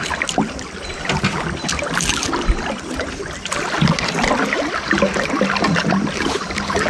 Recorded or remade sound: recorded